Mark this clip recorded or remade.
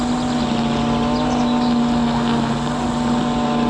recorded